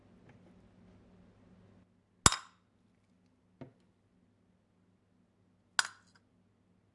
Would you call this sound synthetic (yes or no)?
no